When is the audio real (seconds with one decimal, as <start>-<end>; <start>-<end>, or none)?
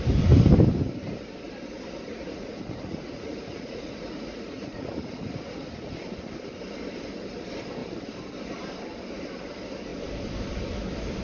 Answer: 0.0-2.1; 5.9-11.2